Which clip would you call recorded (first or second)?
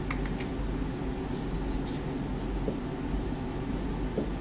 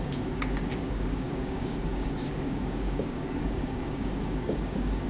first